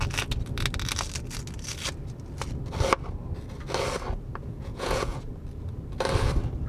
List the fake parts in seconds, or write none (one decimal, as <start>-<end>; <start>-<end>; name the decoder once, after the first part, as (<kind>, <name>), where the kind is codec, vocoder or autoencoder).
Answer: 4.4-5.3 (vocoder, Vocos)